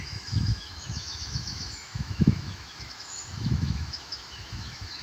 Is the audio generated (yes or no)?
yes